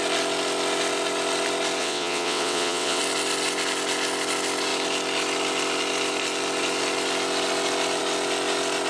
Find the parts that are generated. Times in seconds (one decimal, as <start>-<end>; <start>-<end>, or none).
1.8-3.0